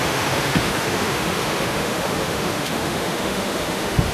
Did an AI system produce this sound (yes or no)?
yes